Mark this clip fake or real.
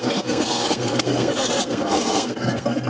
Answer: fake